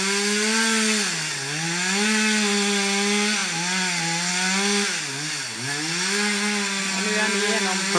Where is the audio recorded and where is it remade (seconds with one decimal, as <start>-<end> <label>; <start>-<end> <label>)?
0.0-8.0 recorded